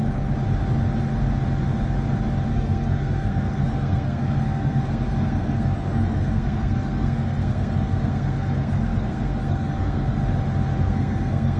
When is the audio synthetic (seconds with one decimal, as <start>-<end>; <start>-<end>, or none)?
2.5-10.2; 10.8-11.6